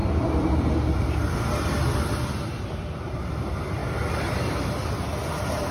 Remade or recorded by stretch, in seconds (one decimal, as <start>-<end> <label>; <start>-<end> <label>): 0.0-5.7 recorded